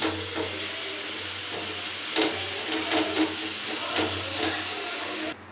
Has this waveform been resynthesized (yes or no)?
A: no